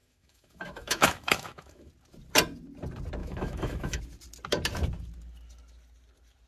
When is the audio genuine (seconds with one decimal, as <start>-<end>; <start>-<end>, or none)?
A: 1.9-3.2; 4.0-6.5

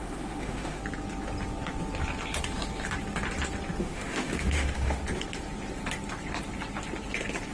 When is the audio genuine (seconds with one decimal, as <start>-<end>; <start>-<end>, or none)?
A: 0.8-3.8; 5.0-7.5